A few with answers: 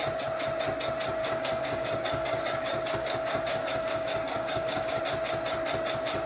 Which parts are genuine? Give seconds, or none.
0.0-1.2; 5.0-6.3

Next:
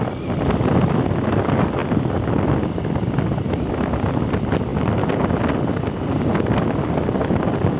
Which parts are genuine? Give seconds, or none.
0.0-7.8

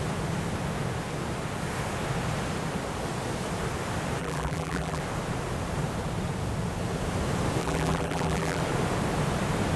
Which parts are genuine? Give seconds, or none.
0.0-4.2; 5.0-7.6; 8.6-9.8

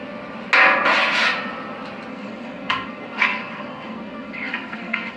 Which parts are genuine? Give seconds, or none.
0.0-2.1

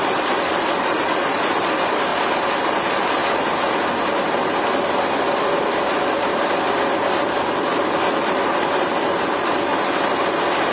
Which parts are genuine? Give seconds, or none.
2.1-2.8; 3.2-8.3; 9.7-10.2

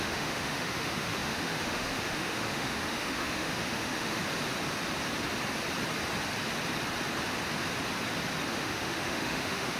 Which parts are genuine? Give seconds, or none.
4.2-8.5

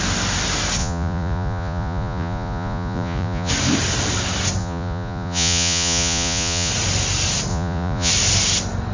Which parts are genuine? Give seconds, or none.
0.0-0.8; 3.5-4.6; 6.7-7.5; 8.1-8.9

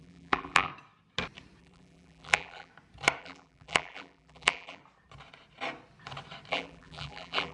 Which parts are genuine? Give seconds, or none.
0.7-1.6; 2.7-3.2; 4.8-6.5